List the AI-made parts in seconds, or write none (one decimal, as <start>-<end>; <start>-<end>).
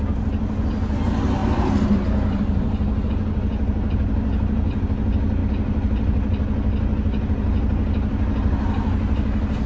none